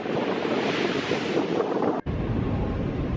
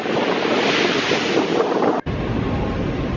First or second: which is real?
second